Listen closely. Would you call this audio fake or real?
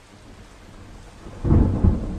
real